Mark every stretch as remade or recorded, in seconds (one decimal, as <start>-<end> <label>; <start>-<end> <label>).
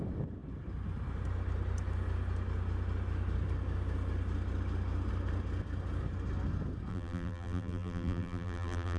0.0-6.9 recorded; 6.9-9.0 remade